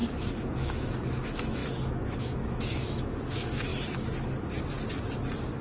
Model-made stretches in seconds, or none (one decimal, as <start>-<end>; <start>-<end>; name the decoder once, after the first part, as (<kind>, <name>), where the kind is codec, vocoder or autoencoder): 0.6-3.7 (autoencoder, DAC-VAE)